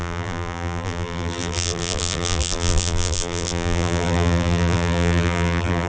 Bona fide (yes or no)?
no